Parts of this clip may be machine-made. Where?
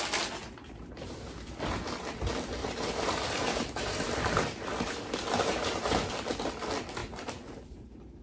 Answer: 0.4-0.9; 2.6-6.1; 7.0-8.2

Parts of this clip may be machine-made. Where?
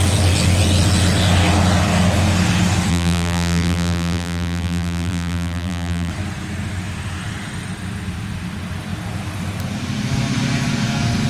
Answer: 2.9-6.1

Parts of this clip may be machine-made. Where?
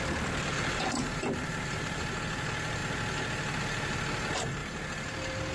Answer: 0.0-2.0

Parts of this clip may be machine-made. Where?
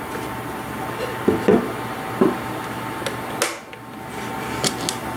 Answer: none